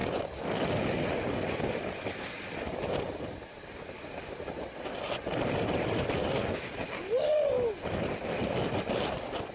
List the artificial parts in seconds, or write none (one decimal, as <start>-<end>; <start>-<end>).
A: none